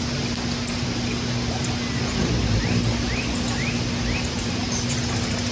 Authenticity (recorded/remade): recorded